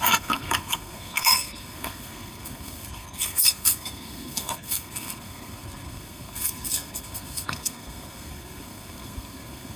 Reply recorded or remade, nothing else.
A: remade